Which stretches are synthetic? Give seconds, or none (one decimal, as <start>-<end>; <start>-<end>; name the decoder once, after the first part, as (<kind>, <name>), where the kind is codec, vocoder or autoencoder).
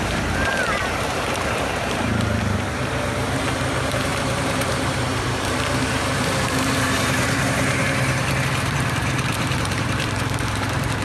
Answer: 0.0-11.0 (vocoder, BigVGAN v2)